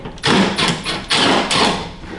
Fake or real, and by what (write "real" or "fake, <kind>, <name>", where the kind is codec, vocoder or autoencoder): real